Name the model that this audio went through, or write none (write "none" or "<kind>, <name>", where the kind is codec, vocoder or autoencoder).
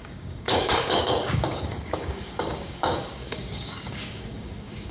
codec, DAC